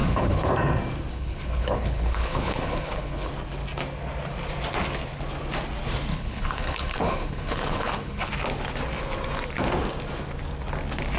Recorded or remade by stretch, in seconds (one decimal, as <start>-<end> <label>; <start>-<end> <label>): 0.0-0.5 remade; 0.5-1.1 recorded; 1.1-3.3 remade; 3.3-6.1 recorded; 6.1-8.3 remade; 8.3-11.2 recorded